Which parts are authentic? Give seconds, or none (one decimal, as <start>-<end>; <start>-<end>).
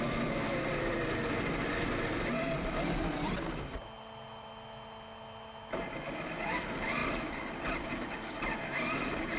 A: 0.0-9.4